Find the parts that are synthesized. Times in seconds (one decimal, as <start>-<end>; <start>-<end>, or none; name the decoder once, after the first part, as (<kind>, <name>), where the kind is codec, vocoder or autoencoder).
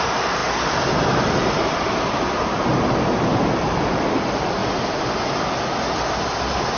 0.0-0.4 (vocoder, BigVGAN v2); 1.2-4.6